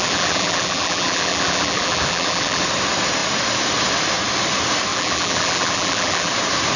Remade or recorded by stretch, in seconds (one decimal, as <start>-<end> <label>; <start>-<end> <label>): 0.0-2.6 remade; 2.6-4.9 recorded; 4.9-6.3 remade; 6.3-6.8 recorded